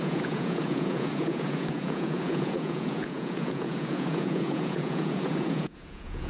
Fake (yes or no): yes